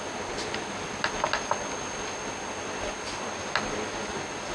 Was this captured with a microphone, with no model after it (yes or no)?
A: yes